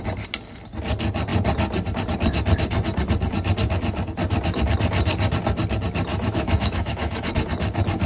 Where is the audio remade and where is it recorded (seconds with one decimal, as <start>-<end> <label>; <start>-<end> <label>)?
0.0-6.1 recorded; 6.1-7.3 remade; 7.3-8.1 recorded